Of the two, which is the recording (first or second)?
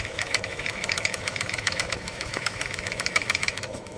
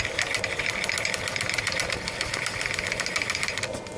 second